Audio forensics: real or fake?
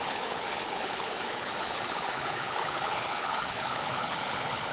fake